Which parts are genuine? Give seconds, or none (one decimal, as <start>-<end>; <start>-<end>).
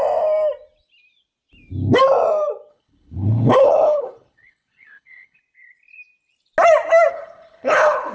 0.0-2.7; 5.4-7.1